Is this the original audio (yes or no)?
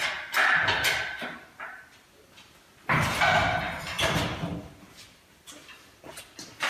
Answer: yes